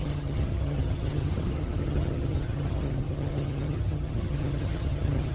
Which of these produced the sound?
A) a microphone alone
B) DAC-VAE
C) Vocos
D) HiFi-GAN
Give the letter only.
D